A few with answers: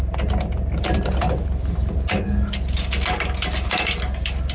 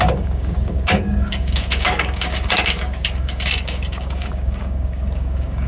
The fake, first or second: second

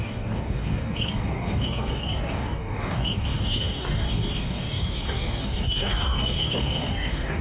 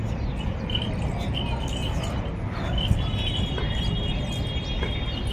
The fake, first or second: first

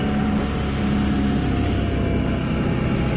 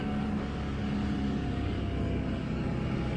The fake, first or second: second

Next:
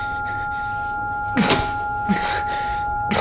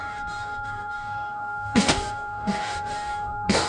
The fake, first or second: second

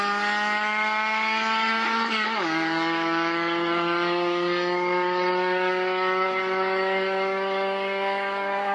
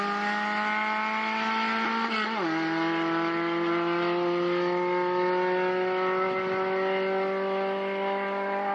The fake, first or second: first